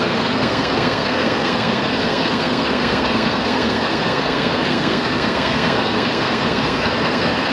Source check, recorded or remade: remade